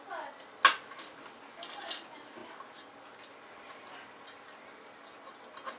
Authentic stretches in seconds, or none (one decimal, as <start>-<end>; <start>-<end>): 0.0-5.8